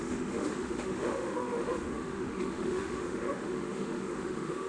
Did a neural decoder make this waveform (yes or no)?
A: yes